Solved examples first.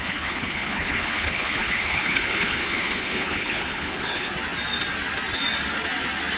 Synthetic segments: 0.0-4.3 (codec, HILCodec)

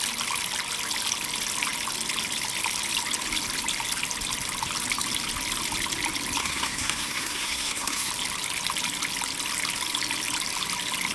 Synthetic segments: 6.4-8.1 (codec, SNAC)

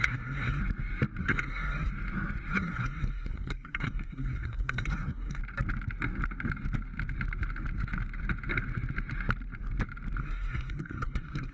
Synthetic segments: 0.0-0.6 (codec, SNAC); 1.2-1.9; 2.5-5.4; 10.2-11.5

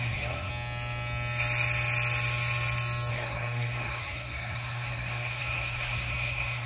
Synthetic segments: 0.0-0.5 (codec, SNAC); 3.1-6.7

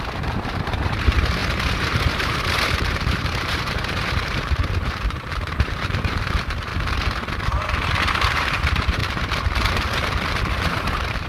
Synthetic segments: 0.0-6.7 (vocoder, BigVGAN v2); 8.0-9.0; 10.7-11.3

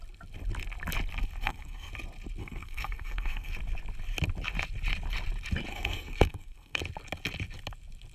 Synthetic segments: 1.4-1.9 (codec, SNAC); 2.4-3.5; 5.7-6.8

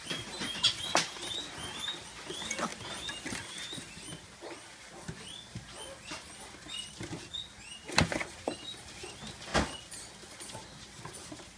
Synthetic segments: none